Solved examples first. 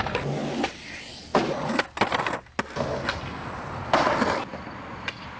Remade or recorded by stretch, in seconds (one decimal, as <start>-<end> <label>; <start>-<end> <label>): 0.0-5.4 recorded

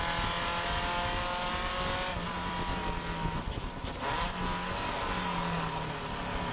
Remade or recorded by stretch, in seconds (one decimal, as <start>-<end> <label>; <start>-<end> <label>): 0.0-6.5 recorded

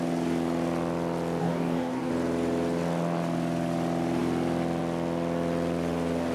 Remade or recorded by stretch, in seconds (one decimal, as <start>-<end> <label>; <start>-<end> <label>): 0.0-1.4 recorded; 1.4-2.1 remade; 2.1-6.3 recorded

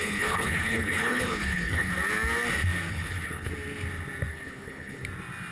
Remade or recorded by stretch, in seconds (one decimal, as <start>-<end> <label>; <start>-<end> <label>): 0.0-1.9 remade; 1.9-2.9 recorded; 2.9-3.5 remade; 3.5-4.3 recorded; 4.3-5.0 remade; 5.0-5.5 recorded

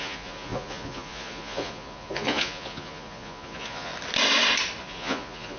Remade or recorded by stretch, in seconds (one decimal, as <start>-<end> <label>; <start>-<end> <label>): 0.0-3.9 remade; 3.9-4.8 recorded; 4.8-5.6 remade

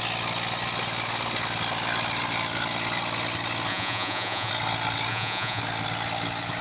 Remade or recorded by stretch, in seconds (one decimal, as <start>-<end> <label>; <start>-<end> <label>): 0.0-3.7 recorded; 3.7-4.5 remade; 4.5-5.1 recorded; 5.1-5.6 remade; 5.6-6.6 recorded